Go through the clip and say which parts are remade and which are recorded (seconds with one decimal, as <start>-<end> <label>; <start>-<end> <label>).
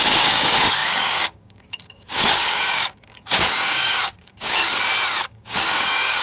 0.0-4.6 remade; 4.6-5.2 recorded; 5.2-6.2 remade